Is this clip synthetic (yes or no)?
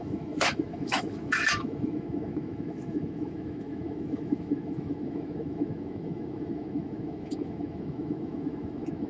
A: yes